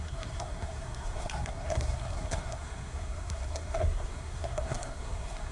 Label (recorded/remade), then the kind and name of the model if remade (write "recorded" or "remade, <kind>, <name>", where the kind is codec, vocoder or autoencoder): remade, codec, SNAC